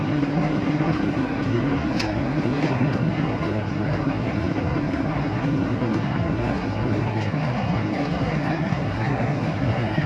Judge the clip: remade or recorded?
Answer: remade